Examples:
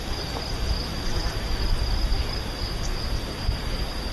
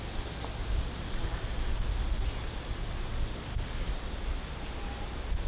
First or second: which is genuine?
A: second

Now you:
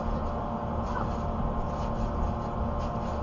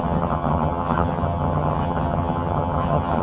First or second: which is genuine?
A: first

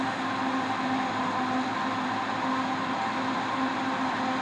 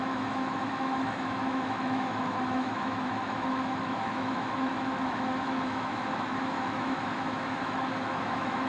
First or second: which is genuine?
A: first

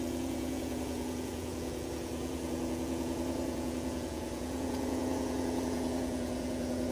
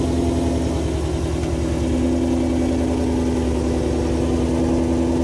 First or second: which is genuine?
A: second